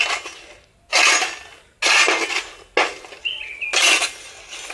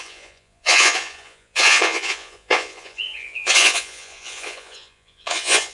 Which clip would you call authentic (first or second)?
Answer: first